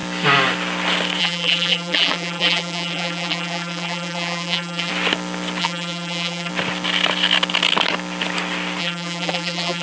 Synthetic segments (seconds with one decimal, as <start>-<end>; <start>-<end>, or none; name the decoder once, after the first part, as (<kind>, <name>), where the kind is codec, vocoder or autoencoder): 1.2-4.9 (vocoder, BigVGAN v2); 5.6-6.5; 8.8-9.8